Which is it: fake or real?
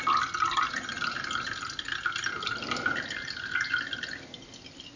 real